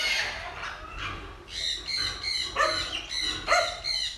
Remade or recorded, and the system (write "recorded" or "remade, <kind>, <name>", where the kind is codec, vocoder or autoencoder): recorded